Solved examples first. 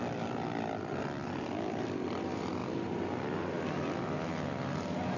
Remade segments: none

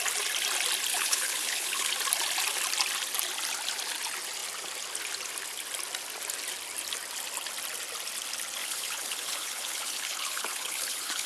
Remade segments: 0.9-1.9 (codec, HILCodec); 8.6-11.3

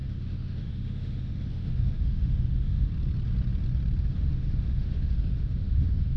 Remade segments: 0.0-2.9 (autoencoder, DAC-VAE); 4.0-6.2

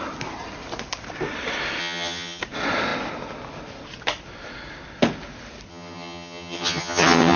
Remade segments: 1.8-2.4 (vocoder, HiFi-GAN); 5.7-7.4

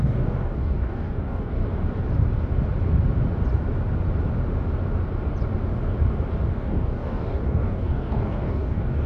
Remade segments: 0.0-1.6 (codec, DAC); 6.5-9.1

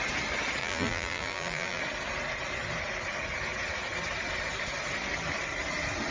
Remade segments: 0.6-1.8 (vocoder, BigVGAN v2)

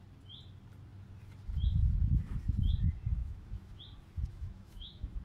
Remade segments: 3.2-3.8 (autoencoder, DAC-VAE); 4.3-5.2